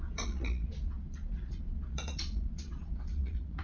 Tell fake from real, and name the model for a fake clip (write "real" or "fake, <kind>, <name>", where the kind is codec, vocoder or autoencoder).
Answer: fake, vocoder, Vocos